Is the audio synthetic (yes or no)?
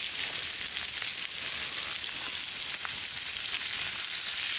no